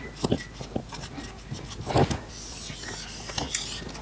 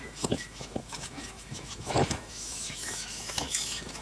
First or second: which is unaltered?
first